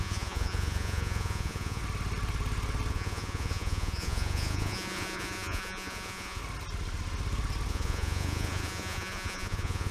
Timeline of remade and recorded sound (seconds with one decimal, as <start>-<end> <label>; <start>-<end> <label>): 0.0-1.8 remade; 1.8-2.9 recorded; 2.9-6.4 remade; 6.4-7.7 recorded; 7.7-9.9 remade

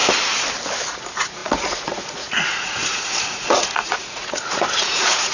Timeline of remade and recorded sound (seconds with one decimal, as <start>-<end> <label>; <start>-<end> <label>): 0.0-1.0 recorded; 1.0-5.3 remade

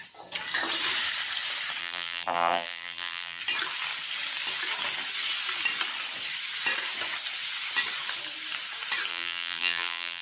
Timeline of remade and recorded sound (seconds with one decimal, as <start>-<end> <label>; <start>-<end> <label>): 0.0-1.8 recorded; 1.8-3.4 remade; 3.4-9.1 recorded; 9.1-10.2 remade

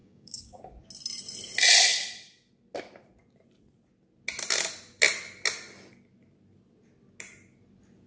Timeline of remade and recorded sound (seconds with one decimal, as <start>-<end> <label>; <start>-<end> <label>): 0.0-0.6 remade; 0.6-8.1 recorded

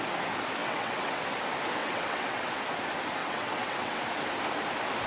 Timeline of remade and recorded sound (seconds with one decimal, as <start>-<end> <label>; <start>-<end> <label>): 0.0-0.6 recorded; 0.6-1.2 remade; 1.2-1.8 recorded; 1.8-2.6 remade; 2.6-3.2 recorded; 3.2-4.0 remade; 4.0-5.1 recorded

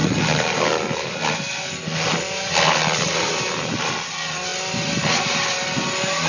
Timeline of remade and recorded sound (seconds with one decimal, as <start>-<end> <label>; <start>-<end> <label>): 0.0-6.3 recorded